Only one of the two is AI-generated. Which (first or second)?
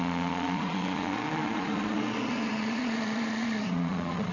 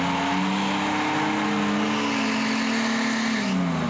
first